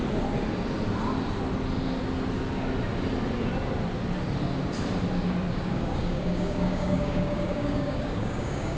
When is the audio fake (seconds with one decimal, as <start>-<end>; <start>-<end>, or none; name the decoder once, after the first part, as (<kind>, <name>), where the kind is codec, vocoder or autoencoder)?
5.5-8.8 (codec, DAC)